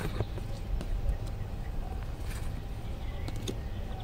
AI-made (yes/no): no